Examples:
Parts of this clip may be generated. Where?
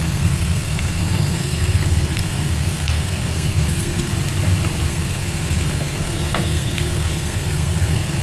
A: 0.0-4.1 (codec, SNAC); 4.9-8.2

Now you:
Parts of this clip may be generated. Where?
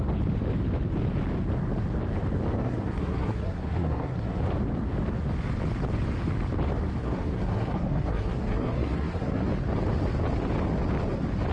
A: 2.5-4.4 (codec, SNAC); 7.0-9.5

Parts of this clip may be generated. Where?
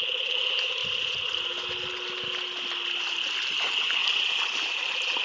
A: none